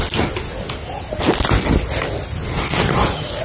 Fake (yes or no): no